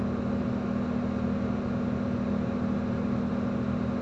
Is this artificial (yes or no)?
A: no